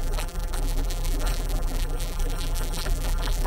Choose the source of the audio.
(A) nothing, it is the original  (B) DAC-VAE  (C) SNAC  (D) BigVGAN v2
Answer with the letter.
D